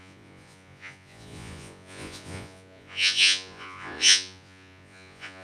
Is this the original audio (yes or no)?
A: no